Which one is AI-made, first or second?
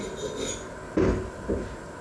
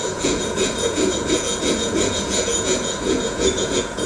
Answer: second